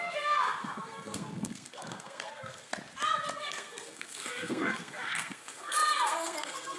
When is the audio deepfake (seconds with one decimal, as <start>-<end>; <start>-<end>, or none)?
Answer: 0.0-2.7; 3.3-6.8